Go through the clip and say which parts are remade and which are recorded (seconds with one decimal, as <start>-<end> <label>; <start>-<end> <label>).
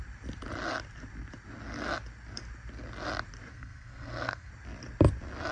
0.0-3.5 recorded; 3.5-4.5 remade; 4.5-5.5 recorded